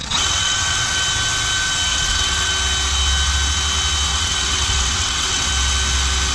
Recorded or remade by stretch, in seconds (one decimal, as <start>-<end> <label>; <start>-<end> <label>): 0.0-0.9 remade; 0.9-1.9 recorded; 1.9-2.5 remade; 2.5-4.1 recorded; 4.1-5.5 remade; 5.5-6.3 recorded